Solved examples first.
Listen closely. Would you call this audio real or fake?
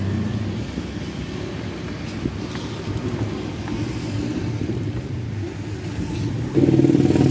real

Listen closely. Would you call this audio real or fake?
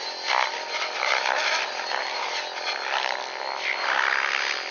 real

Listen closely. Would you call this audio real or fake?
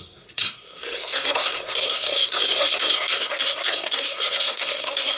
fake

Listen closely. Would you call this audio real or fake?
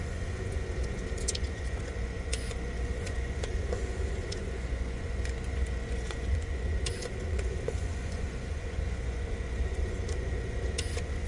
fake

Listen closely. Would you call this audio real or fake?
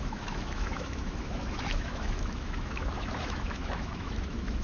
fake